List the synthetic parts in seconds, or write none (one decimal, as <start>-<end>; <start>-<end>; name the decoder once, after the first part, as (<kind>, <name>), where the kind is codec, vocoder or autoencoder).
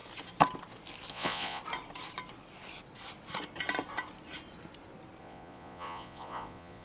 1.1-1.6 (vocoder, Vocos); 5.2-6.8